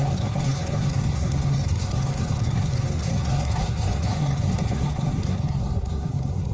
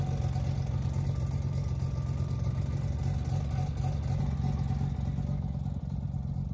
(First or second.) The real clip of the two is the second